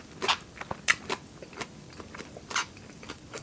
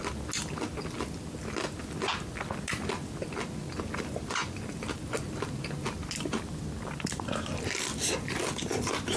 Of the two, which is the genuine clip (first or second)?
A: second